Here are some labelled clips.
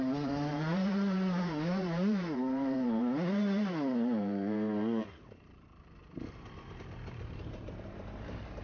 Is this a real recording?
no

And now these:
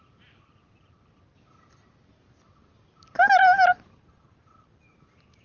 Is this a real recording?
yes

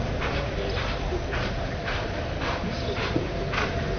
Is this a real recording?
yes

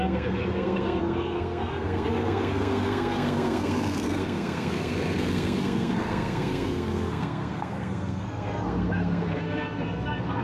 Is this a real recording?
no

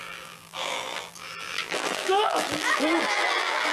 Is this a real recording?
no